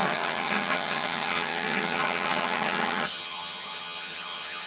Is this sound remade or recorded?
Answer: remade